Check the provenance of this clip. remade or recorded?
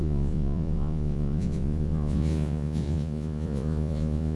remade